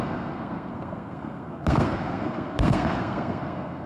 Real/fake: fake